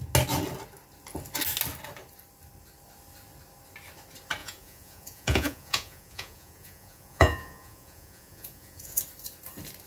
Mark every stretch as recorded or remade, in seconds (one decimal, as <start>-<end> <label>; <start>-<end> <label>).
0.0-4.4 recorded; 4.4-9.0 remade; 9.0-9.9 recorded